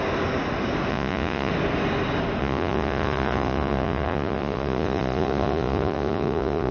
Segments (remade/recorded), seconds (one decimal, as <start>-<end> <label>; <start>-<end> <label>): 0.0-0.9 recorded; 0.9-1.5 remade; 1.5-2.4 recorded; 2.4-6.7 remade

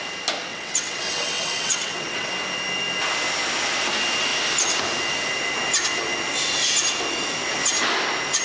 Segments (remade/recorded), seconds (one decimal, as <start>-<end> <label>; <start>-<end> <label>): 0.0-0.5 recorded; 0.5-2.3 remade; 2.3-8.4 recorded

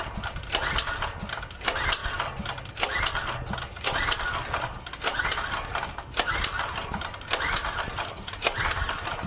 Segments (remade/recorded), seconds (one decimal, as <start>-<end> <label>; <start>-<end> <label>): 0.0-9.3 recorded

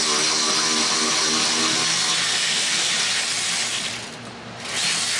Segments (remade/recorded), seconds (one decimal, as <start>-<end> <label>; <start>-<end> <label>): 0.0-2.3 recorded; 2.3-2.9 remade; 2.9-5.2 recorded

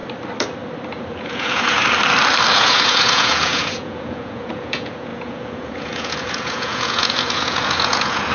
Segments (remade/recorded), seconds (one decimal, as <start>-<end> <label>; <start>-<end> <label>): 0.0-0.9 recorded; 0.9-1.8 remade; 1.8-2.5 recorded; 2.5-8.3 remade

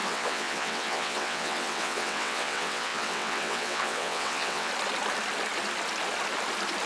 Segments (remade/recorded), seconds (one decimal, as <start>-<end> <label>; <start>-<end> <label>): 0.0-4.7 remade; 4.7-6.9 recorded

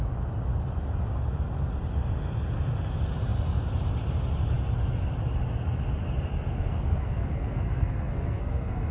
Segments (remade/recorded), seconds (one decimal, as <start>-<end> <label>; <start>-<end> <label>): 0.0-6.5 recorded; 6.5-8.9 remade

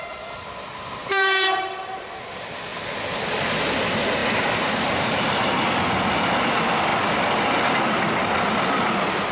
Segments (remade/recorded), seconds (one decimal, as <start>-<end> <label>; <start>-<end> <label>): 0.0-1.0 recorded; 1.0-1.6 remade; 1.6-4.2 recorded; 4.2-5.7 remade; 5.7-9.3 recorded